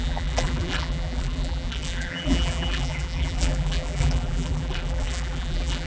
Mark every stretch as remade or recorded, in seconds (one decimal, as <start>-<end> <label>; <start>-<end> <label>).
0.0-5.9 remade